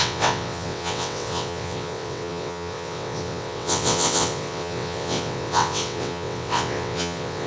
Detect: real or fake fake